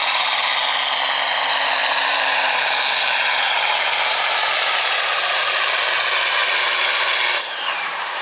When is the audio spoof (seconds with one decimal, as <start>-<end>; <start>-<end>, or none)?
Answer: 0.0-0.5; 1.3-8.2